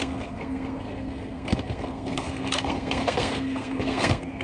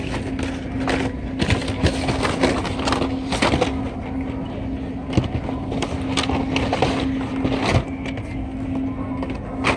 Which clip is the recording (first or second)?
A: second